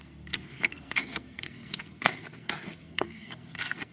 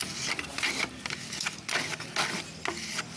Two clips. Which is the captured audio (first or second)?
second